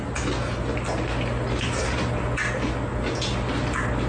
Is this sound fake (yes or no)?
no